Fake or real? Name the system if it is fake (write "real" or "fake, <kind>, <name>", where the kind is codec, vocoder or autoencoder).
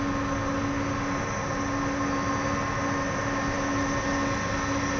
real